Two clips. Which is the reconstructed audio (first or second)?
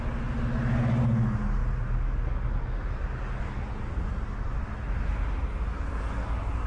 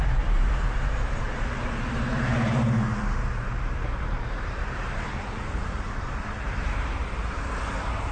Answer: second